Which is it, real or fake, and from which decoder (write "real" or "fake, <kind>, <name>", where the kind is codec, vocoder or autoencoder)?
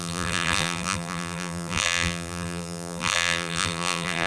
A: fake, vocoder, BigVGAN v2